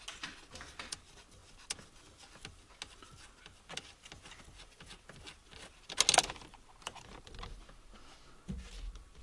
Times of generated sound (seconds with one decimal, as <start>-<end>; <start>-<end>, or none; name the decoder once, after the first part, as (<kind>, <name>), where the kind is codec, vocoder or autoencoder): none